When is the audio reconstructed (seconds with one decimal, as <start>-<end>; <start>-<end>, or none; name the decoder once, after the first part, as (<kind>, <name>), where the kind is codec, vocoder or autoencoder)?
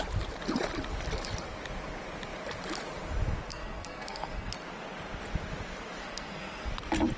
3.5-4.5 (codec, SNAC); 6.0-6.7